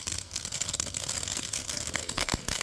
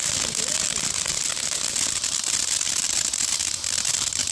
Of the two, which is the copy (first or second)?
first